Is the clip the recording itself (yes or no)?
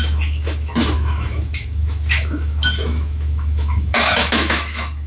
no